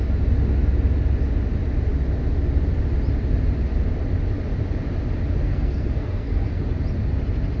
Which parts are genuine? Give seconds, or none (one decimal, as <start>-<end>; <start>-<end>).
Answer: 0.0-5.4; 6.6-7.6